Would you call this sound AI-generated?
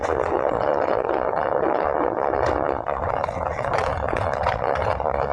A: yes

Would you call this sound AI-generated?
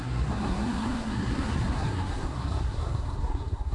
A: yes